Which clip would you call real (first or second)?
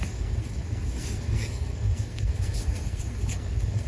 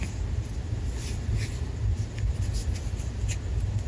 second